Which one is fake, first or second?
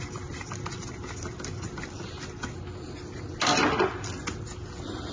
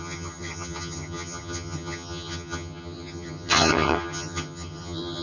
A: second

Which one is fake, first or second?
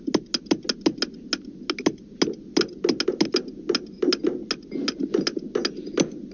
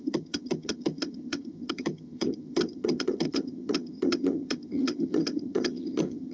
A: second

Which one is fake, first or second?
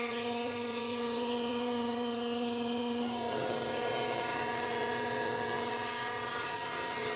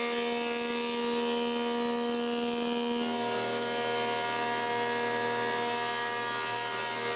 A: first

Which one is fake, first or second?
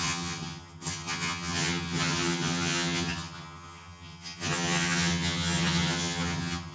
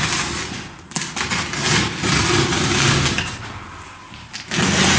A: first